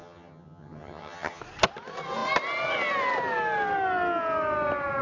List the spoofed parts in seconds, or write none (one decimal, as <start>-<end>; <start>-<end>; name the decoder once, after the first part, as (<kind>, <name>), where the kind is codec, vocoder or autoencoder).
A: 0.0-1.4 (vocoder, HiFi-GAN)